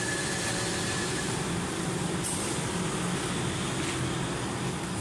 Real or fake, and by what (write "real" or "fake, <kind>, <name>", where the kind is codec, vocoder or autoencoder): real